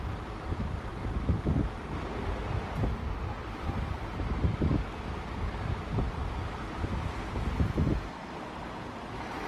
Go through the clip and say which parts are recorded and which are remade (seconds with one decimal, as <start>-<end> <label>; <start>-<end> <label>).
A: 0.0-9.5 recorded